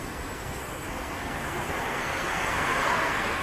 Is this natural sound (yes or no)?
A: no